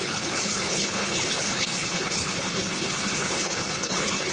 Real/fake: fake